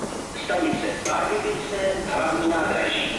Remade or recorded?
recorded